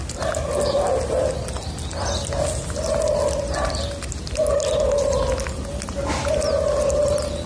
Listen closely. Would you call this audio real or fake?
real